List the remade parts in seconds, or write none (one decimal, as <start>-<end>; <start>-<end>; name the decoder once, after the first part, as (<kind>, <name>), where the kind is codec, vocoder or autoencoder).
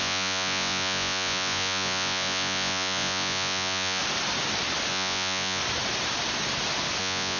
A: 0.0-4.0 (vocoder, Vocos); 4.9-5.6; 7.0-7.4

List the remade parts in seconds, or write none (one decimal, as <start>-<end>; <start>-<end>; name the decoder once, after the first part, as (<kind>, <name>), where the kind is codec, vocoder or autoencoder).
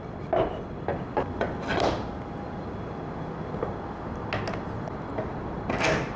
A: none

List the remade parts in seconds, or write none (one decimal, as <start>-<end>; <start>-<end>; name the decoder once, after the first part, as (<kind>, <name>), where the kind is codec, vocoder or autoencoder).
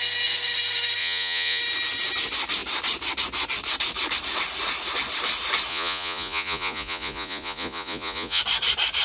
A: 1.0-1.6 (vocoder, Vocos); 5.7-8.4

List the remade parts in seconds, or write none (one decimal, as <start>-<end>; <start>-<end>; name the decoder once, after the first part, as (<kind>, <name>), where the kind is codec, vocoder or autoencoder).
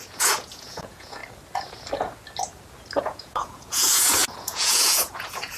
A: 0.0-1.2 (vocoder, Vocos); 3.0-5.6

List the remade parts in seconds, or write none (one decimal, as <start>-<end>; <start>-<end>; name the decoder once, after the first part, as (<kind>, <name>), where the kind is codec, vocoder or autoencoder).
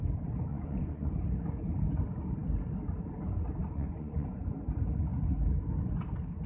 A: 0.5-1.1 (vocoder, Vocos); 3.6-4.4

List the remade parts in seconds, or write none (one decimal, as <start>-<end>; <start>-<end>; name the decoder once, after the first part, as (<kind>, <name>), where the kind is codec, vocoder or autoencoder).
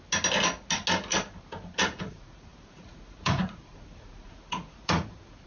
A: 1.8-5.1 (vocoder, Vocos)